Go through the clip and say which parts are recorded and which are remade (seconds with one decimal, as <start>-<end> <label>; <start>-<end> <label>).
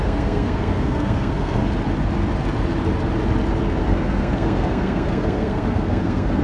0.0-1.6 remade; 1.6-3.8 recorded; 3.8-6.4 remade